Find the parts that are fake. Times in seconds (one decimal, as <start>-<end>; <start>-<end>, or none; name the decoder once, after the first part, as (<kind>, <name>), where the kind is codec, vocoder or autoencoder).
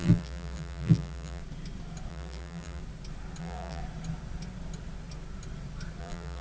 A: 0.0-1.4 (vocoder, BigVGAN v2); 2.1-2.8; 3.4-3.8; 6.0-6.4